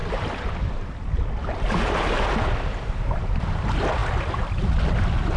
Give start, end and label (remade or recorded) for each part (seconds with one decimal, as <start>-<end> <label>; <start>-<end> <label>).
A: 0.0-5.4 recorded